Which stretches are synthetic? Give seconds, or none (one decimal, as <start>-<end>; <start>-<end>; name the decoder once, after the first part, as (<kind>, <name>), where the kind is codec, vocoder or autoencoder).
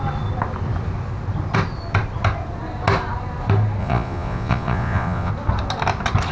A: 3.8-5.3 (vocoder, Vocos)